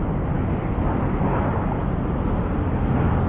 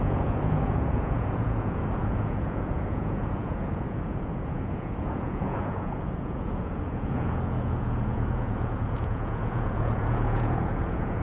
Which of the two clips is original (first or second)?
first